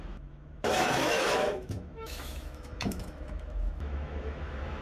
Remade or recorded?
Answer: remade